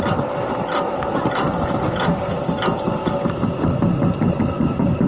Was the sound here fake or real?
real